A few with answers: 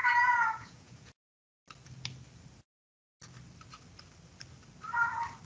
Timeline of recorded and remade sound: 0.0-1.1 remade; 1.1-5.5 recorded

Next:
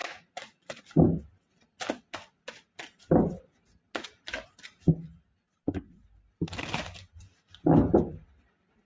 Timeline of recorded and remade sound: 0.0-0.8 remade; 0.8-8.9 recorded